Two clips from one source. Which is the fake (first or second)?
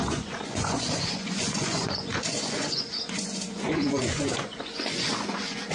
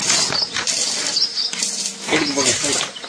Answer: first